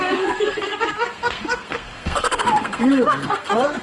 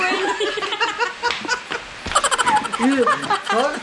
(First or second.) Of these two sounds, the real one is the second